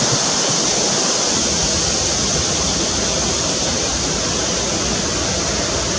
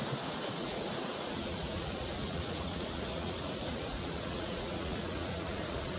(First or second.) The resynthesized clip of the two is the second